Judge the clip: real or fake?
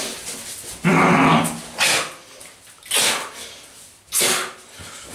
real